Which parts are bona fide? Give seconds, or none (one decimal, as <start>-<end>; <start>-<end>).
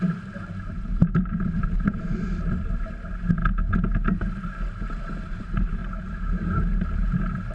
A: 3.4-4.9; 5.8-7.5